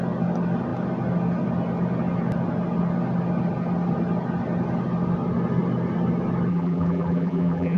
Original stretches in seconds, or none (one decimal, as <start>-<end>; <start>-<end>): 0.0-6.5